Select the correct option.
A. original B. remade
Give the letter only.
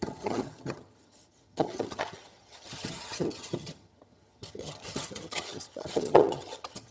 B